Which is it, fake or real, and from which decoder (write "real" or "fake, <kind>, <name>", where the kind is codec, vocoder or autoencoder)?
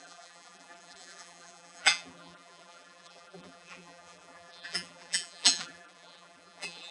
fake, vocoder, BigVGAN v2